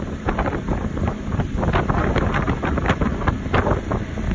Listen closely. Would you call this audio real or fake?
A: real